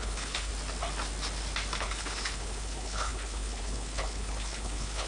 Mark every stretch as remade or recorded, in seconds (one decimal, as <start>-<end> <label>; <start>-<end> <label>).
0.0-0.5 remade; 0.5-1.8 recorded; 1.8-5.1 remade